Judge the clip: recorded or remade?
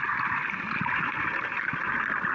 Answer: recorded